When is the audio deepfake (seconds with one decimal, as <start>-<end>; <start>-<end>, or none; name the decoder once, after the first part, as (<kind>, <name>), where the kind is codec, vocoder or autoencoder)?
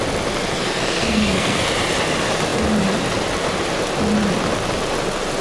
0.6-1.6 (codec, SNAC)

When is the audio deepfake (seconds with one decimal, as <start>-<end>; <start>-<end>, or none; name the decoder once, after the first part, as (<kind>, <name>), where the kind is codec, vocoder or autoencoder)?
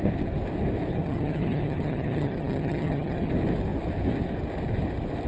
0.9-3.3 (vocoder, HiFi-GAN)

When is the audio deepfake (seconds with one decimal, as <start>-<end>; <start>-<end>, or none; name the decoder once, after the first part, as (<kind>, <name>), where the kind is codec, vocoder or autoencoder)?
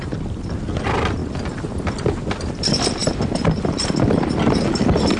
none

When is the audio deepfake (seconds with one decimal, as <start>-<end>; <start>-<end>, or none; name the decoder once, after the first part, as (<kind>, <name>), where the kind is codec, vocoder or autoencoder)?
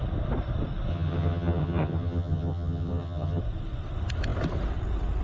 0.9-3.4 (vocoder, HiFi-GAN)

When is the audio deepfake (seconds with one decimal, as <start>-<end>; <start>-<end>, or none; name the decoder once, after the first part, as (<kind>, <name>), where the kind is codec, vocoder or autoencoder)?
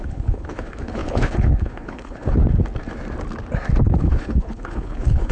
0.0-2.4 (codec, HILCodec); 3.8-5.3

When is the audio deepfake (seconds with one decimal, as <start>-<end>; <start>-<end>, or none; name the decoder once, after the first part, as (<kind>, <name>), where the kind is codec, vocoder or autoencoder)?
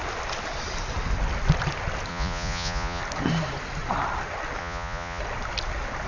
2.1-3.0 (vocoder, Vocos); 4.6-5.2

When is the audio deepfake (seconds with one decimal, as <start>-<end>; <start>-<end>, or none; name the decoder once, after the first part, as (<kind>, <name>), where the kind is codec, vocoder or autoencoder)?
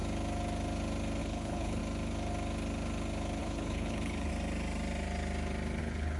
1.2-1.8 (codec, HILCodec); 3.4-4.3; 5.8-6.2